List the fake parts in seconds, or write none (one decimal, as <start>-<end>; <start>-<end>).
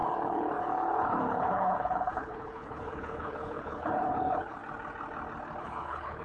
0.0-4.6; 5.6-6.2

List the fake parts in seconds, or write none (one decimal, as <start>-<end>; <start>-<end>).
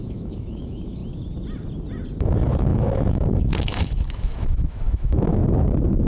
0.0-1.0; 2.2-5.4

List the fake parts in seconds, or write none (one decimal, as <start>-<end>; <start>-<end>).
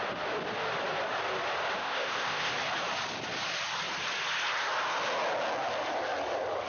1.8-2.5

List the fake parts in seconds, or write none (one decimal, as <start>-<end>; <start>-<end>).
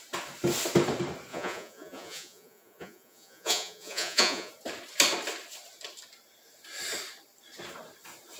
1.3-4.5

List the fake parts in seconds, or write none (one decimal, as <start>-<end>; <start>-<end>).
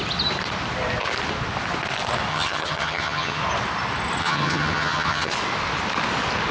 2.3-3.4; 4.2-5.3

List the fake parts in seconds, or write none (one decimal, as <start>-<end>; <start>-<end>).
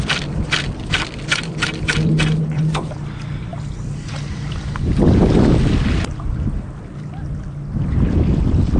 0.0-8.8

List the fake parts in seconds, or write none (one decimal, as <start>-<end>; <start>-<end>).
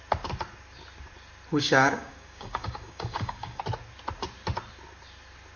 1.5-3.6